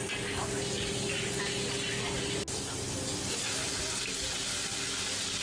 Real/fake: real